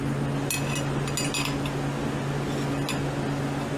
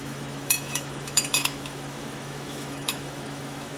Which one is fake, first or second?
second